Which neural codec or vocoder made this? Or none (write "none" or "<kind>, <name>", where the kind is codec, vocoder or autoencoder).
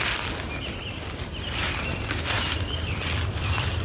none